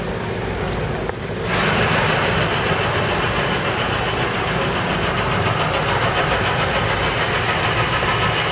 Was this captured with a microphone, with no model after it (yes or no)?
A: yes